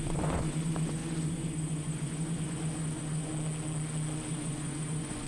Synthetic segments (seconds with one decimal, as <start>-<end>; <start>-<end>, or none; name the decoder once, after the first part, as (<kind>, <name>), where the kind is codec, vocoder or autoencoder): 0.0-3.3 (vocoder, Vocos); 4.3-5.3